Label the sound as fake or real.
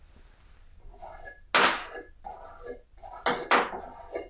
real